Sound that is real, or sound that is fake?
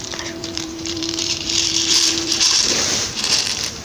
fake